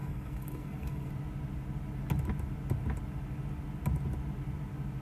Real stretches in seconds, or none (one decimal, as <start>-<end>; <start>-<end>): 1.1-5.0